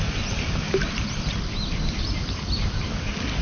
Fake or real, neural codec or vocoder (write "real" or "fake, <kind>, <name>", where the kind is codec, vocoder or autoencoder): real